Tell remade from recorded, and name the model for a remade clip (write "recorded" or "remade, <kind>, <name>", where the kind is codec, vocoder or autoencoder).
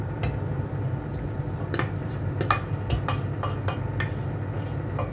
recorded